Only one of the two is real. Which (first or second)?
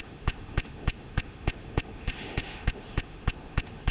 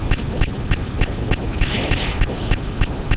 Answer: second